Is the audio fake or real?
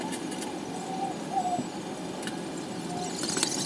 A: real